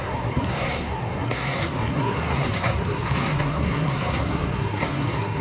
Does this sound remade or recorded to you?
remade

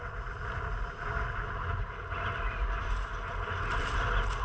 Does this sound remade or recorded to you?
recorded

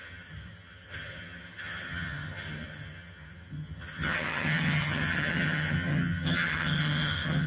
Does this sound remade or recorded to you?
remade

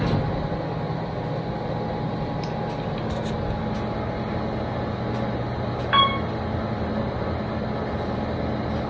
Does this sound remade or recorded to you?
recorded